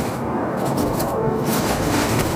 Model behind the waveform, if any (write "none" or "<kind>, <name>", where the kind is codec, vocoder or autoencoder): codec, DAC